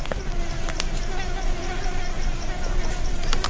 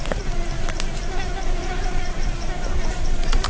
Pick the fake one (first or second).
second